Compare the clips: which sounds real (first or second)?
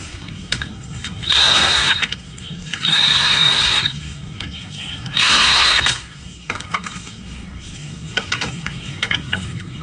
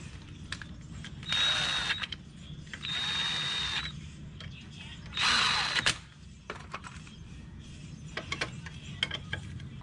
second